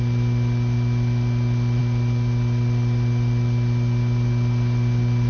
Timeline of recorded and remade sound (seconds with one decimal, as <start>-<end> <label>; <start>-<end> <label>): 0.0-5.3 recorded